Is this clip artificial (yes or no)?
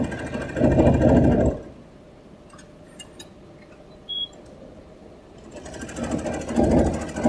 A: no